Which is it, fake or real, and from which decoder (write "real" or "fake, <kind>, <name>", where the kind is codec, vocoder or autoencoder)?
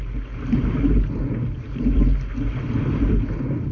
real